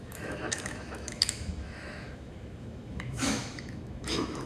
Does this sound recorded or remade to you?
remade